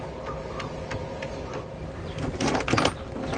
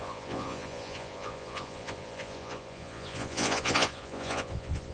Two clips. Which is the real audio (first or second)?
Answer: first